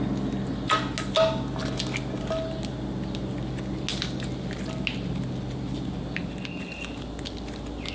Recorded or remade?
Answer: recorded